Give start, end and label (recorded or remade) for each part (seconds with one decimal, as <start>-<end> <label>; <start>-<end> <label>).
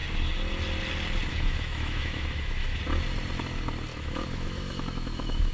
0.0-1.3 recorded; 1.3-2.8 remade; 2.8-3.9 recorded; 3.9-5.5 remade